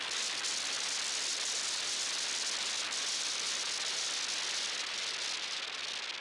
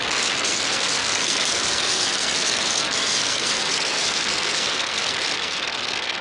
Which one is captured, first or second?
first